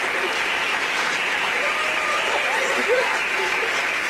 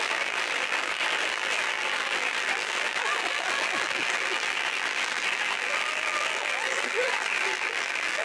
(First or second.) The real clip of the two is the first